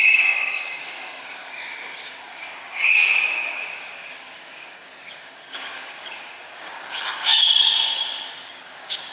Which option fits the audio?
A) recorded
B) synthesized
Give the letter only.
B